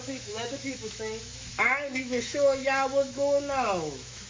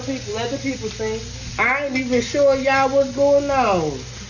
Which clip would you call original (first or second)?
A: second